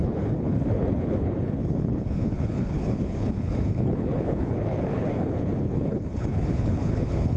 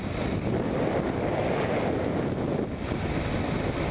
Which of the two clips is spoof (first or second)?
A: first